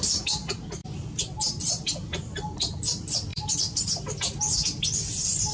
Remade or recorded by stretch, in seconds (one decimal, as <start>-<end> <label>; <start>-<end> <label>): 0.0-3.3 recorded; 3.3-4.2 remade; 4.2-5.5 recorded